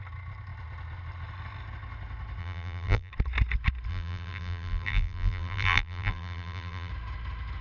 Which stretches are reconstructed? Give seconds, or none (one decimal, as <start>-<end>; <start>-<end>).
2.4-3.1; 3.9-6.9